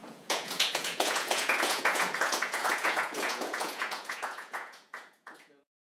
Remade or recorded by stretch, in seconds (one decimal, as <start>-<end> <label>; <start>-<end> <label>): 0.0-6.0 remade